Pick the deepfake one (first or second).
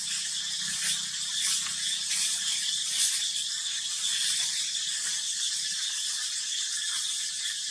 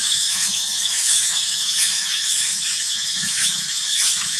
second